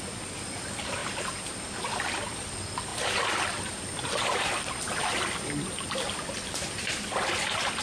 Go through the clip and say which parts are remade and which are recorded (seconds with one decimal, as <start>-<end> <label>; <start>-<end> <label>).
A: 0.0-7.8 recorded